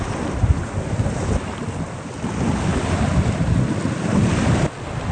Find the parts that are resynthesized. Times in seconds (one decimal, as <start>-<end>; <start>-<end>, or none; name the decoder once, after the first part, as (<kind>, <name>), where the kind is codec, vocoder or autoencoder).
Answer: none